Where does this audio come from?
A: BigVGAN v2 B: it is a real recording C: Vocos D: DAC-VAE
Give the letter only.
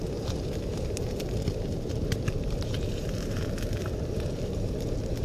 A